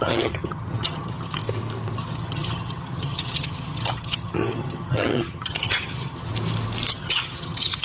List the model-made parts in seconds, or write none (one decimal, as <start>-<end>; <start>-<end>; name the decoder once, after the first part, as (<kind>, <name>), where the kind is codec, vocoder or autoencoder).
0.0-1.4 (vocoder, HiFi-GAN); 2.0-6.3; 6.9-7.8